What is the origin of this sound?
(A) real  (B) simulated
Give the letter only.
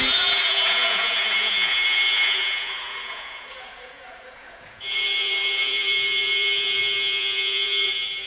B